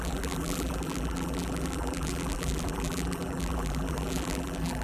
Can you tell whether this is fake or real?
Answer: fake